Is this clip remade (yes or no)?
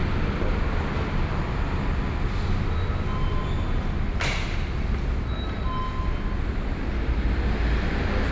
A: no